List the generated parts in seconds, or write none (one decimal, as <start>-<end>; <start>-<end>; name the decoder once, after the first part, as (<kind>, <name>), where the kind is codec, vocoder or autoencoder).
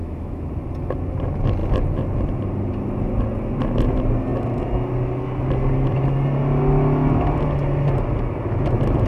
0.0-0.5 (autoencoder, DAC-VAE)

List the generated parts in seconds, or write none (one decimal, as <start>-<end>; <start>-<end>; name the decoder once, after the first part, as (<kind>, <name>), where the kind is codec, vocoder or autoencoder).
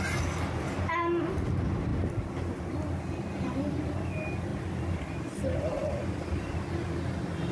none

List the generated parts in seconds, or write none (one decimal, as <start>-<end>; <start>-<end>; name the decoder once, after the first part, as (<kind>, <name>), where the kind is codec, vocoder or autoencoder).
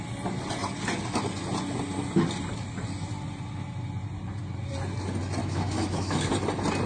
5.4-6.3 (autoencoder, DAC-VAE)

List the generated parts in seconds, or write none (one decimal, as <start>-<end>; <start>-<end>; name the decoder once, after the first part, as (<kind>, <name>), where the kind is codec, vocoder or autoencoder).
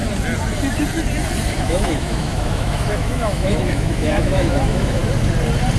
1.6-5.0 (autoencoder, DAC-VAE)